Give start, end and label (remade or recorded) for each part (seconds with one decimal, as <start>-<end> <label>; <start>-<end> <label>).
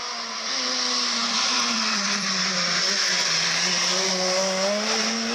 0.0-1.2 recorded; 1.2-3.0 remade; 3.0-5.3 recorded